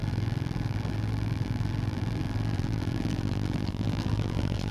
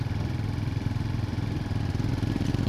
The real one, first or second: second